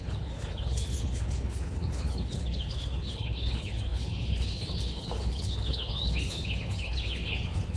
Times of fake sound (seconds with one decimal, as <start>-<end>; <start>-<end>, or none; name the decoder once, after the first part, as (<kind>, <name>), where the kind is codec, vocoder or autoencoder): 0.0-7.8 (codec, HILCodec)